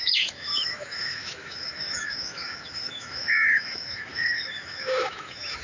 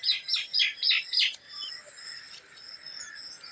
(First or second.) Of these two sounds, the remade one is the first